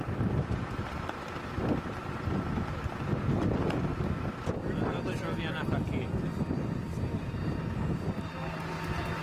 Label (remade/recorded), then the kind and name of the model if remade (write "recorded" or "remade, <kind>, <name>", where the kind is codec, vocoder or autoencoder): recorded